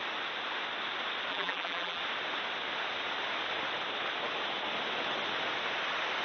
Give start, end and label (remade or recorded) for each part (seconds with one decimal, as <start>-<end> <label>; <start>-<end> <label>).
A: 0.0-1.3 recorded; 1.3-2.0 remade; 2.0-6.2 recorded